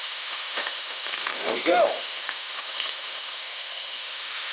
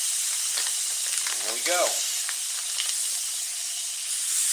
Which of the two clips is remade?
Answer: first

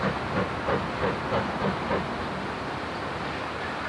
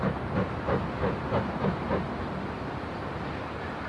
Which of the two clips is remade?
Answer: second